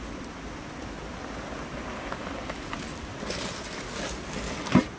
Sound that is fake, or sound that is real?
real